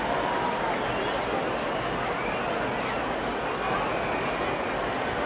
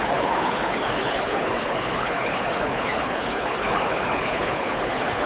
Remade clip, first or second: second